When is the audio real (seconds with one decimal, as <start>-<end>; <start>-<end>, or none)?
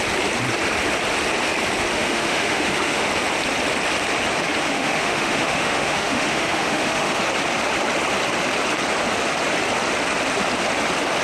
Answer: 0.0-1.9; 3.1-4.6; 7.2-11.2